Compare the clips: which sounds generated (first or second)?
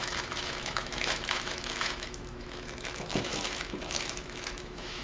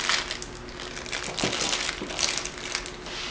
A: first